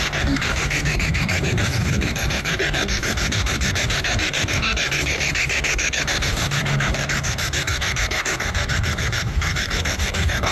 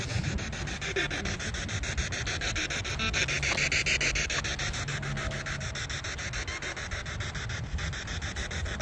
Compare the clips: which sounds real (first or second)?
second